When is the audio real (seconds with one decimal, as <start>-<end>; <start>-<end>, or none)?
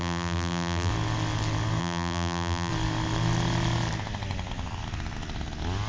0.9-1.8; 2.7-5.9